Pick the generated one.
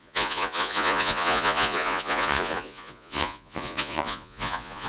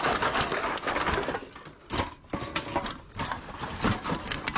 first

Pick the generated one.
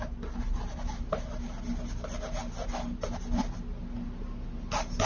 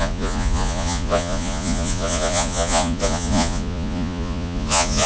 second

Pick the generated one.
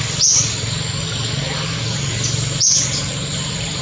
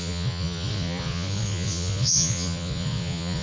second